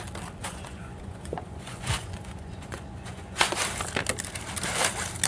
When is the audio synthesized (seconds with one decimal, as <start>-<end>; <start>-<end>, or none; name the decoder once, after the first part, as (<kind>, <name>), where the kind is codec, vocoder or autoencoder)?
0.4-3.6 (vocoder, Vocos)